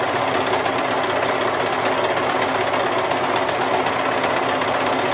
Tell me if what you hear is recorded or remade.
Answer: recorded